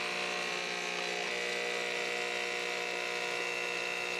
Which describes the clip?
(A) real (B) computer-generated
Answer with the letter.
A